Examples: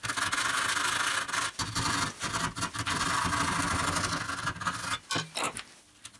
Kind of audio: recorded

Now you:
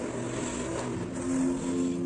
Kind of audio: recorded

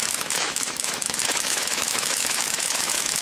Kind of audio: remade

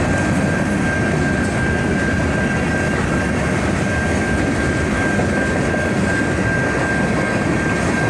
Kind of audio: recorded